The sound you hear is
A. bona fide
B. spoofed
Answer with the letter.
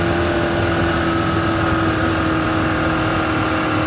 A